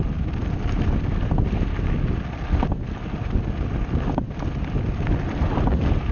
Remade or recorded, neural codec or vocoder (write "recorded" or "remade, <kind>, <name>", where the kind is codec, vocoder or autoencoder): recorded